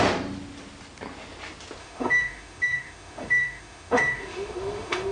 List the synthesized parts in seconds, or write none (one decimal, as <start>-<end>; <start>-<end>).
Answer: 1.8-5.1